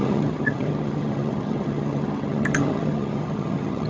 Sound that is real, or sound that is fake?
fake